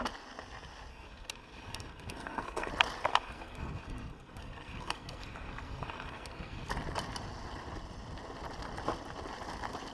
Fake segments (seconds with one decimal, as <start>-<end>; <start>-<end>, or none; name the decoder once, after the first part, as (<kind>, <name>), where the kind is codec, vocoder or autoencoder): 0.9-2.7 (codec, SNAC); 3.1-6.7